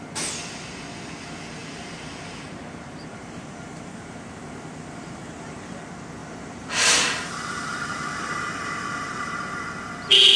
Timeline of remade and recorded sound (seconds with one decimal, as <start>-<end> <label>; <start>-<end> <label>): 0.0-1.6 recorded; 1.6-5.8 remade; 5.8-6.2 recorded; 6.2-9.3 remade; 9.3-10.4 recorded